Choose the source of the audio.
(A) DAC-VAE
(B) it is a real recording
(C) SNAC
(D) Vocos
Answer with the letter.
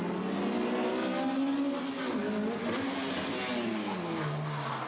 B